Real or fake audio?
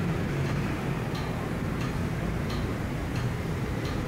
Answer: fake